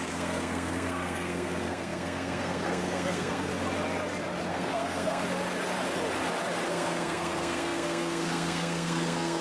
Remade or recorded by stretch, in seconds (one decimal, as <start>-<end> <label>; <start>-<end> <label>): 0.0-3.5 remade; 3.5-4.5 recorded; 4.5-5.2 remade; 5.2-6.7 recorded; 6.7-9.4 remade